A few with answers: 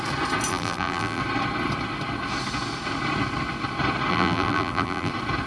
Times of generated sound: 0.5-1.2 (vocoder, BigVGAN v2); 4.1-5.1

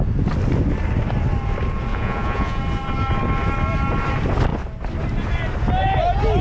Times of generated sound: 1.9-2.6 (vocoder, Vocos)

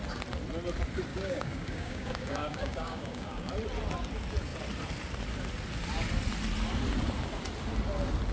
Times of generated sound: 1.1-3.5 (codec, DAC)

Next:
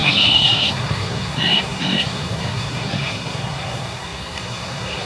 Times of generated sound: 0.0-5.1 (codec, SNAC)

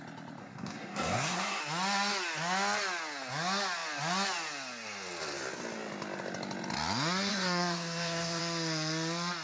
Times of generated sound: 0.4-1.6 (codec, SNAC); 7.3-8.4

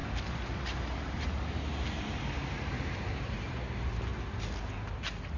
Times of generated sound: 0.0-1.6 (vocoder, BigVGAN v2); 2.4-3.5

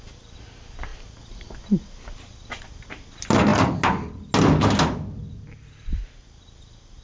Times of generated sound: none